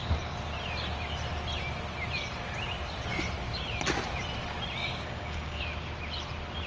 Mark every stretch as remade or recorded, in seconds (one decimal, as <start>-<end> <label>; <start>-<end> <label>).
0.0-4.8 recorded; 4.8-5.6 remade; 5.6-6.7 recorded